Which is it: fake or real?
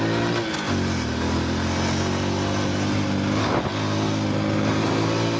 real